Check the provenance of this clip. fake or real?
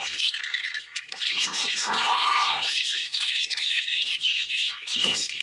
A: fake